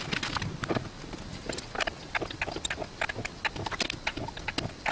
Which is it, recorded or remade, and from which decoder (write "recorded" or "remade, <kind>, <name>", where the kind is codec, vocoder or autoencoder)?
recorded